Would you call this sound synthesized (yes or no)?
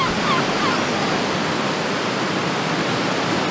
no